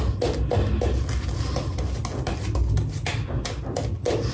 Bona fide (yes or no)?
yes